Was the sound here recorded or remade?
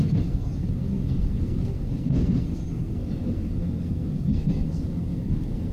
remade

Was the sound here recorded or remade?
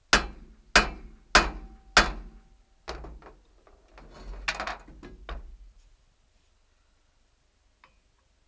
recorded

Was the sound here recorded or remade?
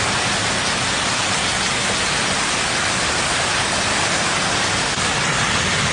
recorded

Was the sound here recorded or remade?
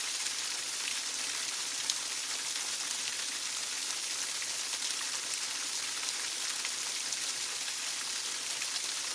recorded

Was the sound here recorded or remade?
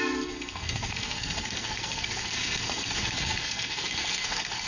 remade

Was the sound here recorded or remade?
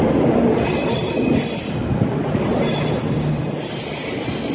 recorded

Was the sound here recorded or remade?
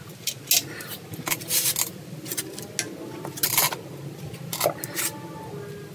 recorded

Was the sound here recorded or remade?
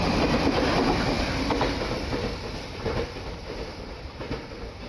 recorded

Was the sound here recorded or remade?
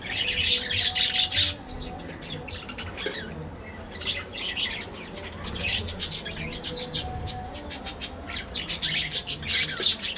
recorded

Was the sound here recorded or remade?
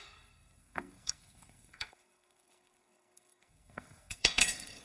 remade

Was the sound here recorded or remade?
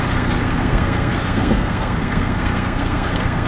remade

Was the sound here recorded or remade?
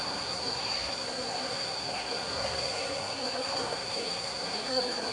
remade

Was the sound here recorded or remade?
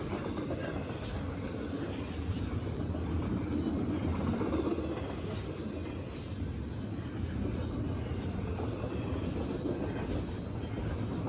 recorded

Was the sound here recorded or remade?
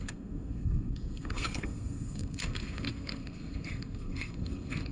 remade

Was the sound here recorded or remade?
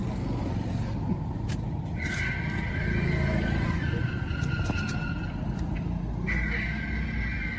recorded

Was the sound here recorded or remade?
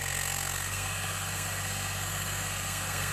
remade